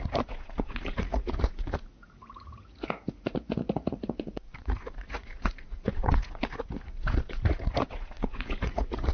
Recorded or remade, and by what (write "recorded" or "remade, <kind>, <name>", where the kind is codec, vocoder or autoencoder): remade, vocoder, Vocos